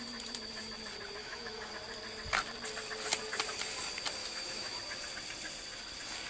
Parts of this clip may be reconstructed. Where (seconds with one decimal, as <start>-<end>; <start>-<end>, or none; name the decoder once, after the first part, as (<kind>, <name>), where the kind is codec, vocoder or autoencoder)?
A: 1.2-1.7 (autoencoder, DAC-VAE); 4.2-4.8